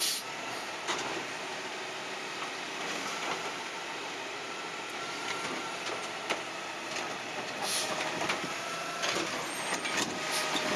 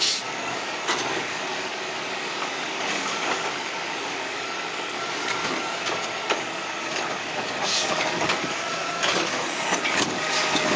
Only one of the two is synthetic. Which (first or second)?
second